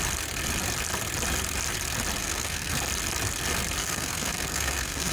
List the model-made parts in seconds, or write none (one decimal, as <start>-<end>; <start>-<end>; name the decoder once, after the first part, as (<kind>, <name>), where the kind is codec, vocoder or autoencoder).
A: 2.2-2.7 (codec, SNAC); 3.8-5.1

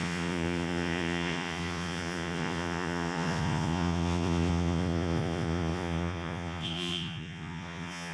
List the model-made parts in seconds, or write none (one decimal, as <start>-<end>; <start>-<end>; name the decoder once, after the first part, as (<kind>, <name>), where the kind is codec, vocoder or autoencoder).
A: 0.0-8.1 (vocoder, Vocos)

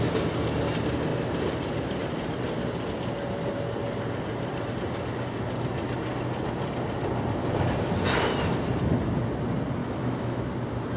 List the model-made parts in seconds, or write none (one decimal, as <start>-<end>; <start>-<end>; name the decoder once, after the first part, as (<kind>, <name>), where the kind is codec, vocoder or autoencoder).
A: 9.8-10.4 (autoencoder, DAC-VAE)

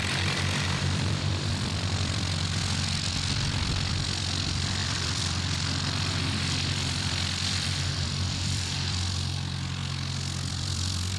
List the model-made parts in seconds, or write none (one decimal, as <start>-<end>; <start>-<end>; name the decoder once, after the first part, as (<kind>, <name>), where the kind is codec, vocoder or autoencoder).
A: 0.0-2.6 (vocoder, BigVGAN v2); 3.9-9.8; 10.5-11.2